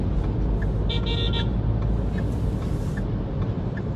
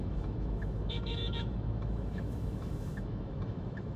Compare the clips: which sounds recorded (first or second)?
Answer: first